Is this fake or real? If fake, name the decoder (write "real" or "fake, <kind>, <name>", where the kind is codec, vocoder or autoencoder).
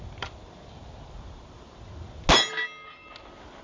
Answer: real